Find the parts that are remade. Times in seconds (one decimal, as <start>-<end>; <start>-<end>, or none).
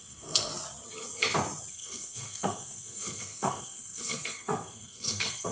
0.0-0.5; 1.7-5.5